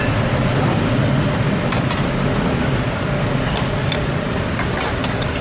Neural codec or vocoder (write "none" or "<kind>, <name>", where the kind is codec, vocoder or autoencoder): none